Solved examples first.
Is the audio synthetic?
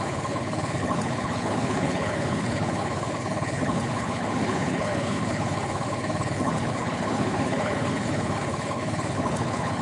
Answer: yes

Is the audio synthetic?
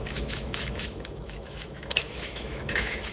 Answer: yes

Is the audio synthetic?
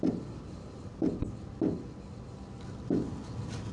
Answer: no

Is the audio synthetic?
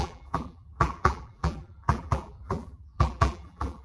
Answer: yes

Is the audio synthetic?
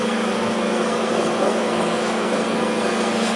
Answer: yes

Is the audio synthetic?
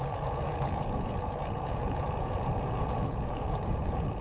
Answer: yes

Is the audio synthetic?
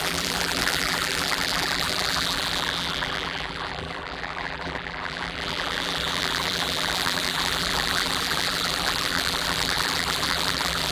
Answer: yes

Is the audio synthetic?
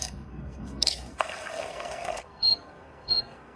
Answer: yes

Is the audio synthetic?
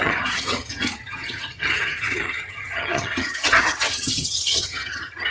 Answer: yes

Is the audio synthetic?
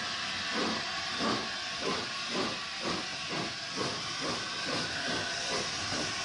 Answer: no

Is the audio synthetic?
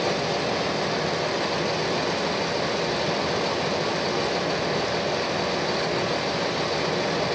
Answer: no